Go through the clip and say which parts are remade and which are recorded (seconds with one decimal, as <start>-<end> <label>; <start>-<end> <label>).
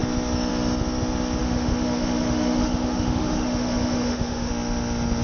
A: 0.0-1.4 recorded; 1.4-4.5 remade; 4.5-5.2 recorded